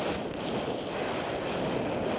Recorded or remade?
recorded